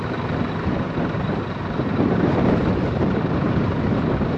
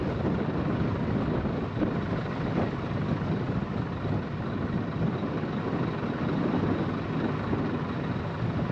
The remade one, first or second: first